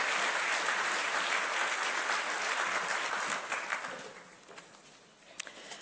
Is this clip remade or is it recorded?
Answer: recorded